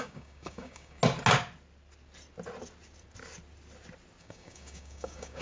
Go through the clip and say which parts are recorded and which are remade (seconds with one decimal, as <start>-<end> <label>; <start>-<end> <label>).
0.0-1.0 remade; 1.0-4.2 recorded; 4.2-5.4 remade